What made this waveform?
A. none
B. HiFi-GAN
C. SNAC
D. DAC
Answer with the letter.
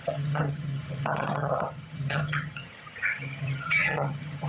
B